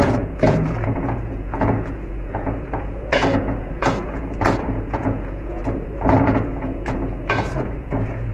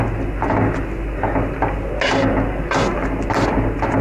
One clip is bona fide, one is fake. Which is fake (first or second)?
first